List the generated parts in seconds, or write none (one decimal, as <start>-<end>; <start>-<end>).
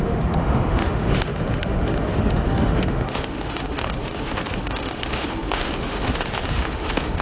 0.0-7.2